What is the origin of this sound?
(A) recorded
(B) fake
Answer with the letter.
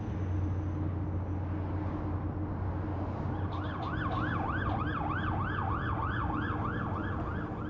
A